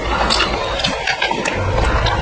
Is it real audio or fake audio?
real